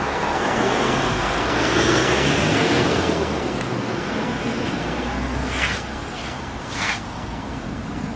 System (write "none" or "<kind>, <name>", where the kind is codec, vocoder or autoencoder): codec, SNAC